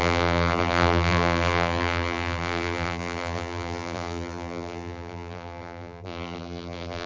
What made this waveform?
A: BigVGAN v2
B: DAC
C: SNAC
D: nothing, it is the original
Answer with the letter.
A